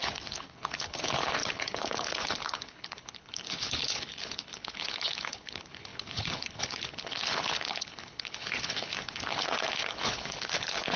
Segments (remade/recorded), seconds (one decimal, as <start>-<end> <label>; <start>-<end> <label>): 0.0-11.0 remade